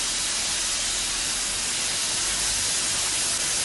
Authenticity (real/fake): real